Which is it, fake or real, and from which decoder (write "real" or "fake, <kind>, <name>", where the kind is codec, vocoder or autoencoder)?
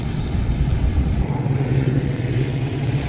fake, vocoder, WaveNeXt